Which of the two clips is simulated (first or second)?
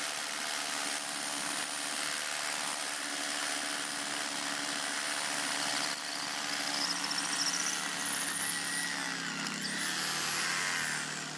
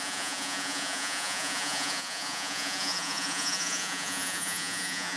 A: second